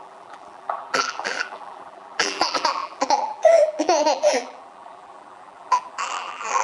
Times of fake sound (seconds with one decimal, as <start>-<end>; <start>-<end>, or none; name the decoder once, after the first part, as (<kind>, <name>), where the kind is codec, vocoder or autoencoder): 0.0-6.6 (vocoder, BigVGAN v2)